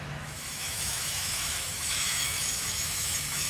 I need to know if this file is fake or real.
fake